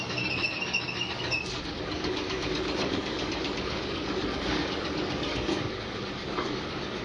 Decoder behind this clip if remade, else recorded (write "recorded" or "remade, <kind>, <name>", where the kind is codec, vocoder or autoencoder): remade, codec, DAC